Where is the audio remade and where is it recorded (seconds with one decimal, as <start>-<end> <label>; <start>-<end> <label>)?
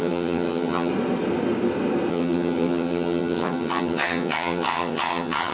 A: 0.0-0.9 remade; 0.9-2.1 recorded; 2.1-5.5 remade